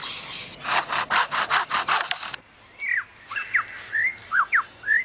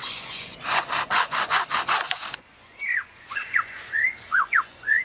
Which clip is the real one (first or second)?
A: first